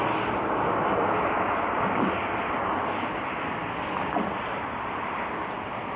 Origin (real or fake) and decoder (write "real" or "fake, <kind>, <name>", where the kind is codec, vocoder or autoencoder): real